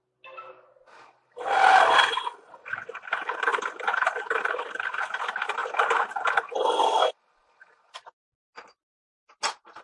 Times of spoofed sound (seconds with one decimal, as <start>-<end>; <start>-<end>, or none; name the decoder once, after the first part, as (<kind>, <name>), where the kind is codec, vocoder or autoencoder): none